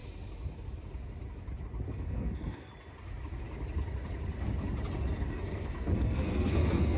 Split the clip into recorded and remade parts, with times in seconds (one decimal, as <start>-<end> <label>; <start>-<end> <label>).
0.0-1.9 recorded; 1.9-2.7 remade; 2.7-5.3 recorded; 5.3-7.0 remade